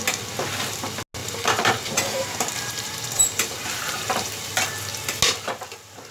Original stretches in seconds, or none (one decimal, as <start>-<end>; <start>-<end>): 0.0-1.2; 4.5-6.1